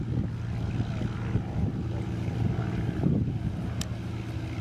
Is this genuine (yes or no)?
yes